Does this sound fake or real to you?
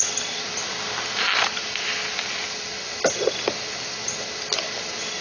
real